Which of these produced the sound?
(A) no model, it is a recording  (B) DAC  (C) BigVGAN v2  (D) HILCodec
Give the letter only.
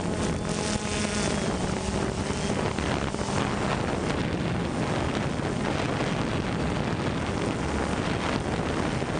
A